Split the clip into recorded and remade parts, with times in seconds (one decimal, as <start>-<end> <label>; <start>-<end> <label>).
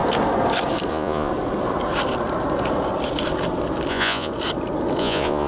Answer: 0.0-0.9 recorded; 0.9-1.3 remade; 1.3-3.9 recorded; 3.9-4.3 remade; 4.3-5.0 recorded; 5.0-5.5 remade